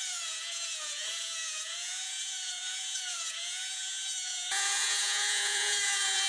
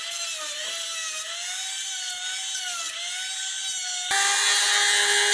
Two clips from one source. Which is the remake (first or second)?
first